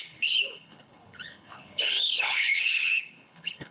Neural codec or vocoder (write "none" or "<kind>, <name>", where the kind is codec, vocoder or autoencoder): codec, HILCodec